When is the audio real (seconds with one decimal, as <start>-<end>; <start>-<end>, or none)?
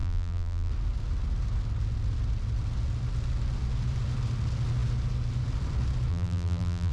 0.7-6.1